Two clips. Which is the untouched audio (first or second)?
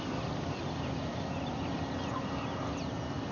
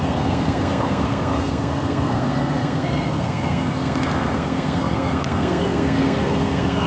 first